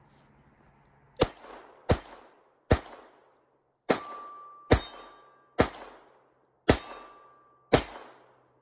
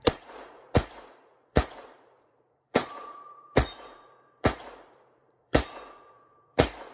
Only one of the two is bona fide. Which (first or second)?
first